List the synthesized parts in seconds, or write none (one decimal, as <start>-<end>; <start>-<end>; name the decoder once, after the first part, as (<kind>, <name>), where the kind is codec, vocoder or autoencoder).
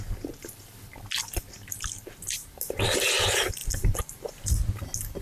3.6-4.3 (vocoder, BigVGAN v2)